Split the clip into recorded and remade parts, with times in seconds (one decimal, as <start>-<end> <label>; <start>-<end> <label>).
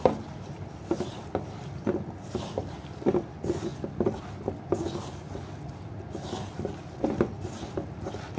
0.0-8.4 recorded